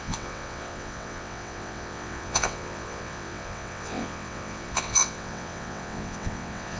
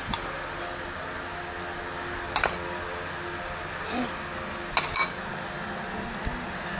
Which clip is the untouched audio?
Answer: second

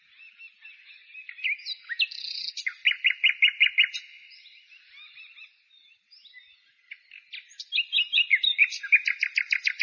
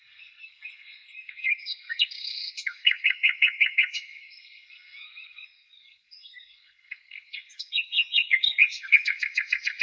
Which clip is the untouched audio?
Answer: first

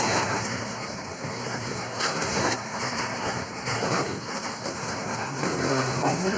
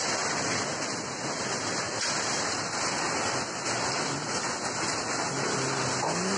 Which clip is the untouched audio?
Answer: second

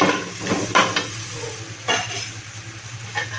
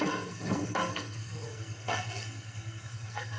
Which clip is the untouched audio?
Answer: first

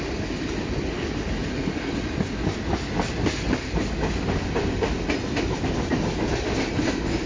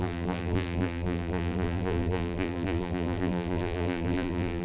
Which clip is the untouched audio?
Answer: first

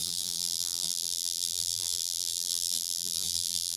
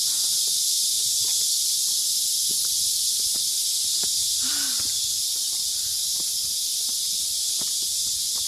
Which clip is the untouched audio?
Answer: second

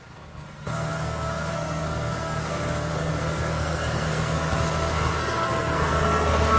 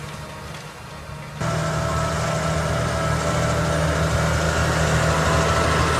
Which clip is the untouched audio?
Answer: second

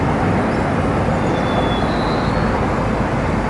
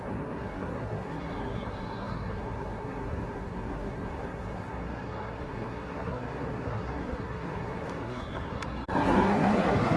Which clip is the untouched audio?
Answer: first